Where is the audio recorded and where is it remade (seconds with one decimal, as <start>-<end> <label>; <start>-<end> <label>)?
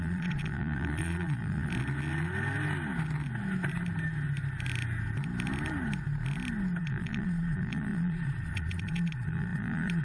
0.0-1.7 remade; 1.7-6.8 recorded; 6.8-10.0 remade